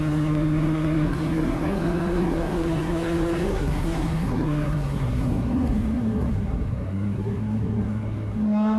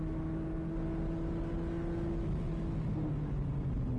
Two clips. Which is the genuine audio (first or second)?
second